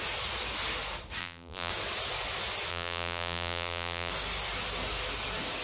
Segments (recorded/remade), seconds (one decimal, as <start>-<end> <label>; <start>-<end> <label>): 0.0-1.2 recorded; 1.2-1.7 remade; 1.7-2.7 recorded; 2.7-4.1 remade; 4.1-5.6 recorded